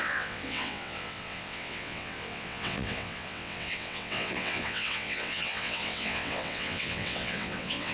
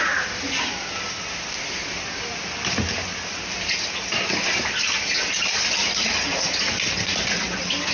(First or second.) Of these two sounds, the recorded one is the second